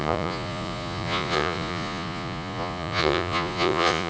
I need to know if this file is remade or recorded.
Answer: remade